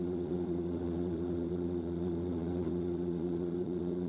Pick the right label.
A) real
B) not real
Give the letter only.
B